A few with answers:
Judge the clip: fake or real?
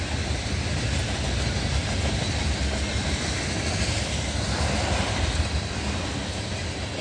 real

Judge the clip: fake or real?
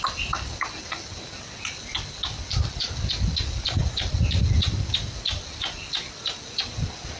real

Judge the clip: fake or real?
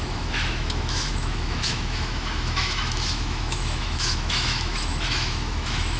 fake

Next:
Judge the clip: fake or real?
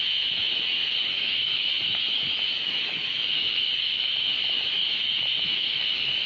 fake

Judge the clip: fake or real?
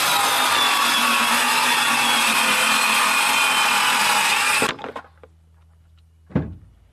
real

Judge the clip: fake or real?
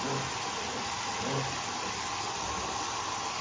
real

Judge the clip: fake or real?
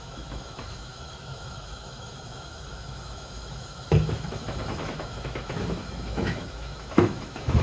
fake